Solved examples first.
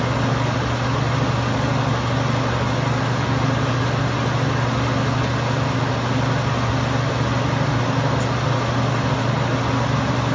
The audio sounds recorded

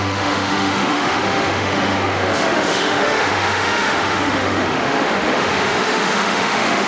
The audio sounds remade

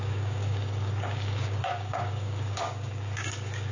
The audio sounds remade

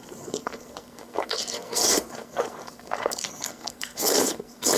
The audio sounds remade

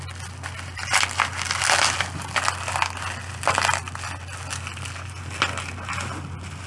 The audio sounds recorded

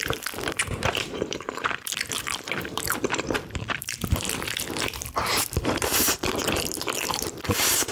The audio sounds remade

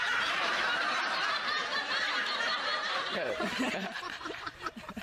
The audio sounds remade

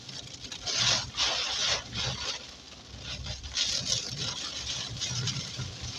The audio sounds recorded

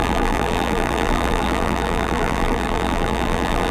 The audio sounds remade